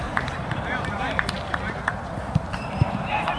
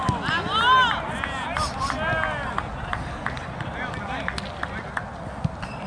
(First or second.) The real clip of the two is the second